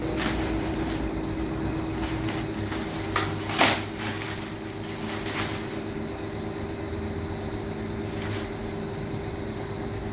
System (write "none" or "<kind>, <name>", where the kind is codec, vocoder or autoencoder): none